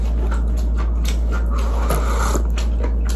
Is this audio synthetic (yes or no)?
no